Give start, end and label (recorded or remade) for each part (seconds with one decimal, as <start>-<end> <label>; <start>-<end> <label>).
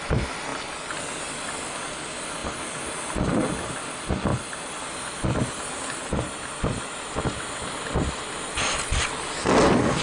0.0-10.0 recorded